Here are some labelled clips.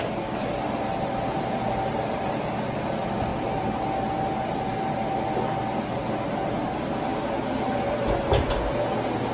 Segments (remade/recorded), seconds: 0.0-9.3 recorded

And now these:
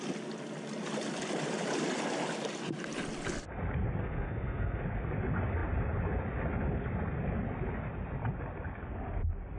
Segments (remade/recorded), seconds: 0.0-4.0 recorded; 4.0-4.8 remade; 4.8-9.6 recorded

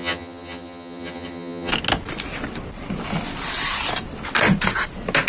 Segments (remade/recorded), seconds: 0.0-1.7 remade; 1.7-5.3 recorded

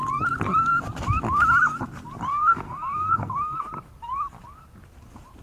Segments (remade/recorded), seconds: 0.0-2.3 recorded; 2.3-3.6 remade; 3.6-5.4 recorded

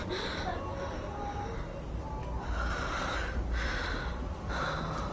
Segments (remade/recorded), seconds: 0.0-5.1 recorded

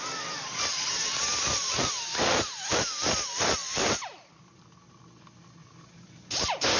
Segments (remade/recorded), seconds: 0.0-1.3 recorded; 1.3-1.9 remade; 1.9-3.6 recorded; 3.6-4.6 remade; 4.6-6.8 recorded